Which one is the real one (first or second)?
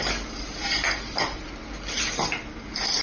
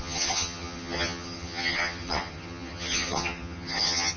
first